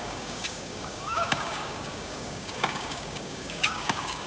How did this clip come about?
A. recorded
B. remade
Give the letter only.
B